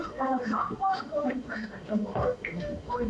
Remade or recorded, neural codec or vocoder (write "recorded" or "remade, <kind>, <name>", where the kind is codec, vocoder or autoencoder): remade, autoencoder, DAC-VAE